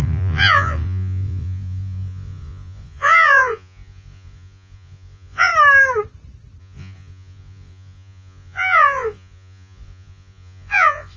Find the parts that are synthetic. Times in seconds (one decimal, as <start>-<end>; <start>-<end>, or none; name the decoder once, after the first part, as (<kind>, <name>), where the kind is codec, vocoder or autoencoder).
0.0-5.5 (vocoder, Vocos); 6.6-11.2